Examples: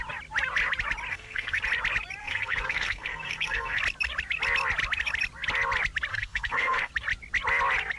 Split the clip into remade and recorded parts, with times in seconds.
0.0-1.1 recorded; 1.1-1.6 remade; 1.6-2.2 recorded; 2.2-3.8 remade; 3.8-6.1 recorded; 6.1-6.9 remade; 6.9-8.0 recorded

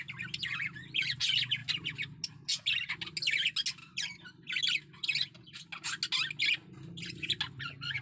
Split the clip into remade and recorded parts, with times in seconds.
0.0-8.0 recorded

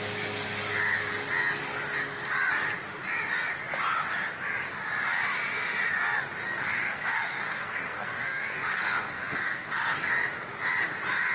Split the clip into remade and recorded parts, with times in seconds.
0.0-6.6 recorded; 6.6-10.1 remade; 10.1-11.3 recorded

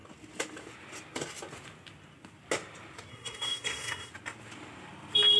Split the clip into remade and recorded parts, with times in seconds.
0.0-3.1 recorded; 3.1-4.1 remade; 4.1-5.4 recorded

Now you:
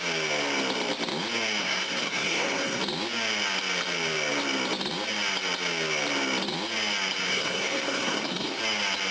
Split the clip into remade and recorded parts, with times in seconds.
0.0-1.6 recorded; 1.6-2.8 remade; 2.8-7.3 recorded; 7.3-8.6 remade; 8.6-9.1 recorded